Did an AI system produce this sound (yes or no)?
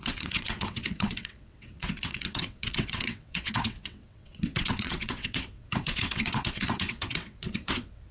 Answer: yes